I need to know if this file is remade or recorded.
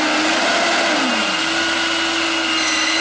recorded